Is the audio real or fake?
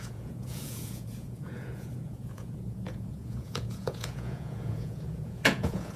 fake